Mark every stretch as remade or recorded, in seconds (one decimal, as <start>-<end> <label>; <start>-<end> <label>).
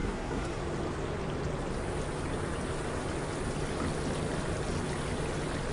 0.0-0.6 remade; 0.6-5.7 recorded